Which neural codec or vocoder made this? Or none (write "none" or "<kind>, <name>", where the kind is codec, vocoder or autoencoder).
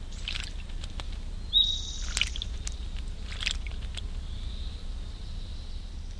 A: none